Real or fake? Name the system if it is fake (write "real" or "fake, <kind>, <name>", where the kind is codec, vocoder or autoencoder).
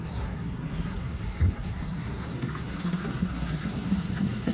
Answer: fake, codec, SNAC